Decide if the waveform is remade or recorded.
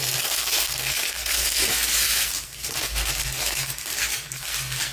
remade